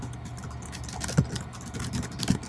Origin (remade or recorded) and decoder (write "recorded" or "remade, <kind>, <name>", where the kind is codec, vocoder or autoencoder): recorded